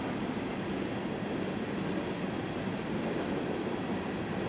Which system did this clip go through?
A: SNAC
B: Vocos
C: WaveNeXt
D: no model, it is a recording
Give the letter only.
D